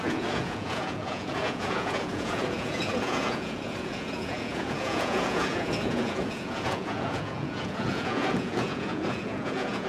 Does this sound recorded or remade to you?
remade